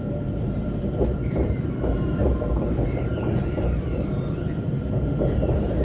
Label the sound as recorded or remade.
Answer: remade